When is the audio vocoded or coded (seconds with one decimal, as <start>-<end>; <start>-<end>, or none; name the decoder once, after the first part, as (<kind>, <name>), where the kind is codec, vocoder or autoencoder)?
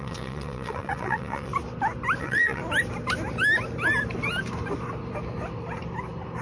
0.0-1.5 (vocoder, WaveNeXt); 2.2-2.6